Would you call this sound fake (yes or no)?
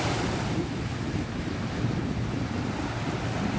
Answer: no